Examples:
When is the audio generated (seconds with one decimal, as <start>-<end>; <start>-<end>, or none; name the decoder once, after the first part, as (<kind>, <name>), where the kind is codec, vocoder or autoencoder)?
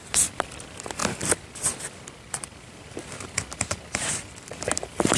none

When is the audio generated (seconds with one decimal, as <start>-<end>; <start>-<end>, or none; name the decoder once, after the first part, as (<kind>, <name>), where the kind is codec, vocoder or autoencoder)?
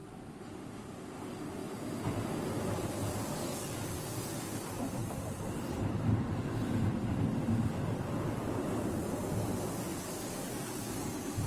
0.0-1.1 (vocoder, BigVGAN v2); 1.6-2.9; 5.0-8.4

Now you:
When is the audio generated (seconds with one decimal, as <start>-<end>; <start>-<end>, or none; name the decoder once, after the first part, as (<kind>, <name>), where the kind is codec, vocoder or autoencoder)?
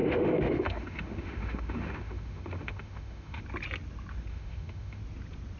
0.0-3.4 (autoencoder, DAC-VAE); 4.3-5.0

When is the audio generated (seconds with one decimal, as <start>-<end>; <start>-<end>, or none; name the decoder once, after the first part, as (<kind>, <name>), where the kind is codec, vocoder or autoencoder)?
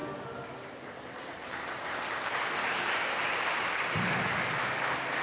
none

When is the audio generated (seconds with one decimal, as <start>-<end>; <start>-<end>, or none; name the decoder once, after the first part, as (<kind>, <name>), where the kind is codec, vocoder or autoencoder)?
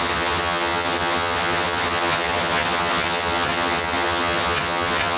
0.0-5.2 (vocoder, HiFi-GAN)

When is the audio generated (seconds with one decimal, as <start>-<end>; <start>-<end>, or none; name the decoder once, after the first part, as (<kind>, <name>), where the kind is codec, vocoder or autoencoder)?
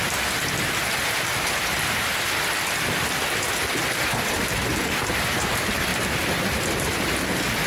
1.0-3.8 (vocoder, BigVGAN v2); 5.9-6.4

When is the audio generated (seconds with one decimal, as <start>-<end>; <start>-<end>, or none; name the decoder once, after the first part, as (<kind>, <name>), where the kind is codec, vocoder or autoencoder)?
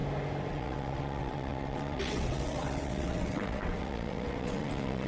0.5-5.1 (vocoder, WaveNeXt)